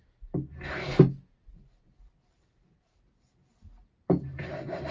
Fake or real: real